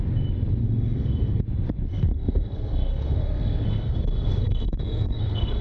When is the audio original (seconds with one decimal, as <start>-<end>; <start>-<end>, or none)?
0.0-0.6; 1.4-1.9